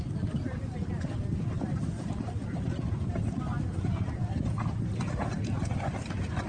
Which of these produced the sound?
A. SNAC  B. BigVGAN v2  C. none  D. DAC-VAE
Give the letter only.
C